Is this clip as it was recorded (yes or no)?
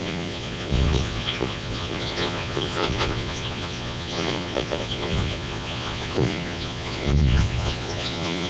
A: no